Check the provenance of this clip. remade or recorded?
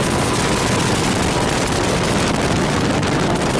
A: recorded